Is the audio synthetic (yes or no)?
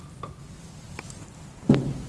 no